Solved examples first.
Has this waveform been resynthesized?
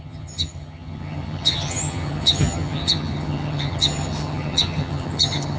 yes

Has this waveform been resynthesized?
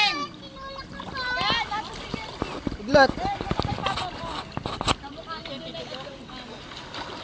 no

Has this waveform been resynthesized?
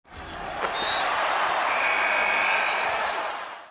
no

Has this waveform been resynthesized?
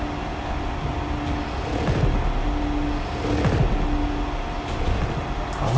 no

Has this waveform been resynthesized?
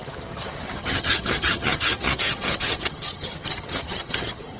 yes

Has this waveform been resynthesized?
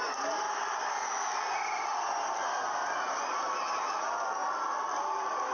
no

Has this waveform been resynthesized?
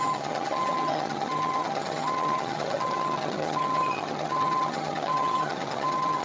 yes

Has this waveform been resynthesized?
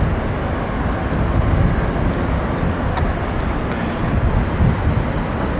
no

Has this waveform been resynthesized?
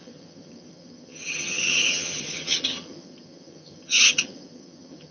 yes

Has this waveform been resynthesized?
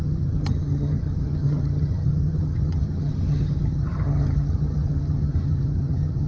yes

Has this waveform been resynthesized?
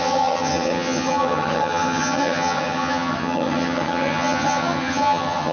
yes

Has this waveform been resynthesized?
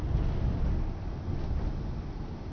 no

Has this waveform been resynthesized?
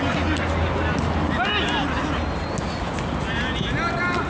no